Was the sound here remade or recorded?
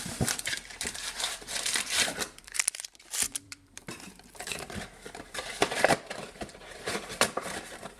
remade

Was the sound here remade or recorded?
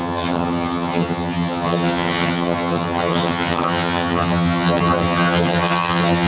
remade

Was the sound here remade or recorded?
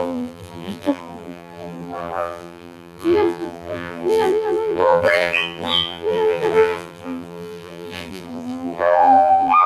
remade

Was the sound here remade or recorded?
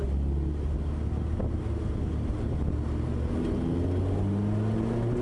recorded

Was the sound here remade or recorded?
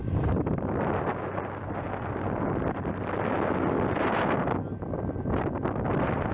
recorded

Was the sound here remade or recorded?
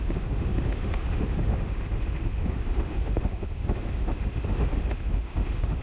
remade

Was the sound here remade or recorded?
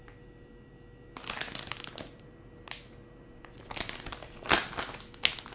recorded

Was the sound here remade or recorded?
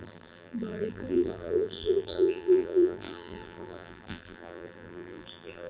remade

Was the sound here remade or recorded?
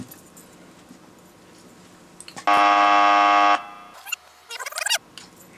recorded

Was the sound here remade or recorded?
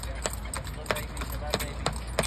recorded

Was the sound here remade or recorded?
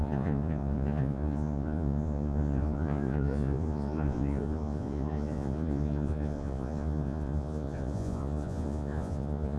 remade